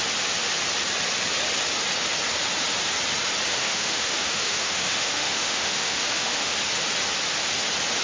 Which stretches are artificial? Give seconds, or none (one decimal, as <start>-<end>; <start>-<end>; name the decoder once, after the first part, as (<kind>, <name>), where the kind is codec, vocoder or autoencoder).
3.5-6.5 (autoencoder, DAC-VAE)